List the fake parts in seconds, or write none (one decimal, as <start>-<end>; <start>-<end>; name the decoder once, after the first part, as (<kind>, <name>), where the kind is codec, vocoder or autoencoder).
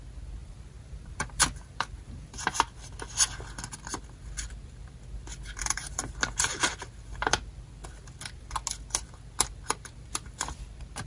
0.4-2.5 (vocoder, BigVGAN v2); 5.3-6.8